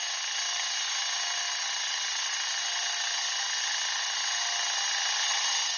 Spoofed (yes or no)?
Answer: no